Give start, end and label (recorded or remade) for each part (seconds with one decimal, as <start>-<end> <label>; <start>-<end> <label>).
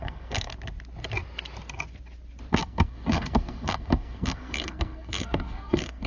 0.0-0.5 remade; 0.5-2.5 recorded; 2.5-6.1 remade